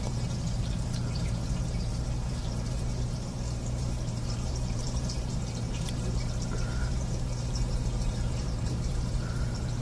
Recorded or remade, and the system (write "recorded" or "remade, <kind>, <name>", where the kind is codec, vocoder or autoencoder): remade, vocoder, BigVGAN v2